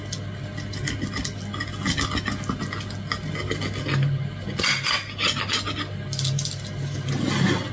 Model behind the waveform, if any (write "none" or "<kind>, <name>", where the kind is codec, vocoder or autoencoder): none